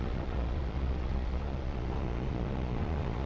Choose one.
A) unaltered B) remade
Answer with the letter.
B